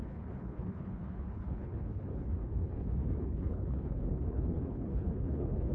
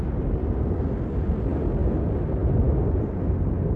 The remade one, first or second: first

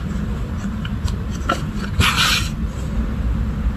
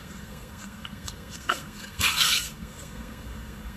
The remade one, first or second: second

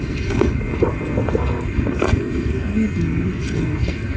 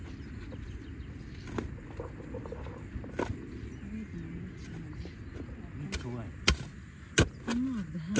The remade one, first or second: first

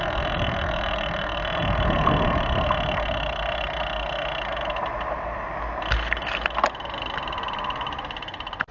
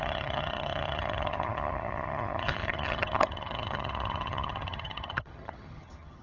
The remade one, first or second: second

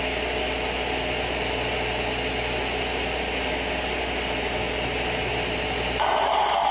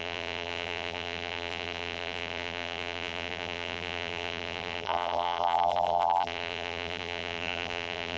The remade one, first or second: second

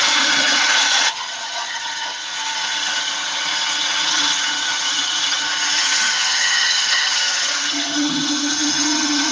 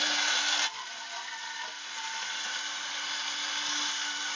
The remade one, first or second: first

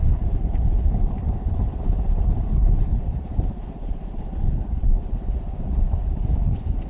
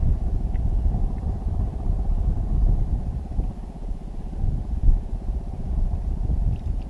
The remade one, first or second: first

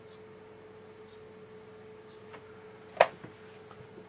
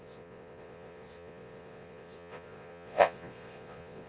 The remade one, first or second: second